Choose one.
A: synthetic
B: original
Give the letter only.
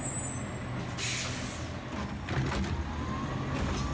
B